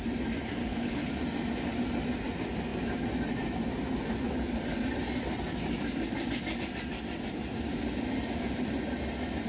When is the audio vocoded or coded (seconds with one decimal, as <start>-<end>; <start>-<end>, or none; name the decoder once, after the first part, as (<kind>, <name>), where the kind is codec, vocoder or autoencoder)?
0.6-1.1 (codec, HILCodec)